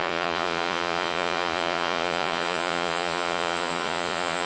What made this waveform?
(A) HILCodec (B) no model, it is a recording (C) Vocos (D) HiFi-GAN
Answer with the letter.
C